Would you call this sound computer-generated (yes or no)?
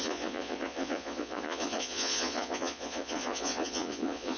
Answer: yes